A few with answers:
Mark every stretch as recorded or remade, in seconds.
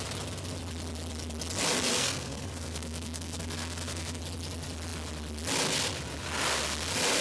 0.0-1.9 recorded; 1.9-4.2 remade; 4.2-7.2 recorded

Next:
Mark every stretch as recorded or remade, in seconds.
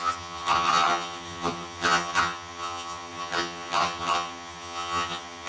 0.0-5.5 remade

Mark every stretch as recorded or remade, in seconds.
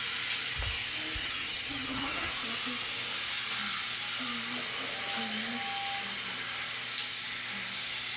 0.0-1.2 recorded; 1.2-2.3 remade; 2.3-8.2 recorded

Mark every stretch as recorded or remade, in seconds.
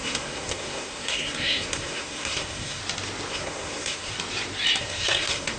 0.0-2.8 remade; 2.8-3.3 recorded; 3.3-4.1 remade; 4.1-4.8 recorded; 4.8-5.6 remade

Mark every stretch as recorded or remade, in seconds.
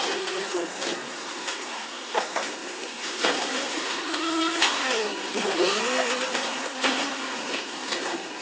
0.0-5.8 remade; 5.8-6.3 recorded; 6.3-8.4 remade